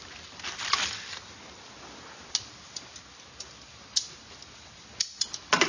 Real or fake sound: real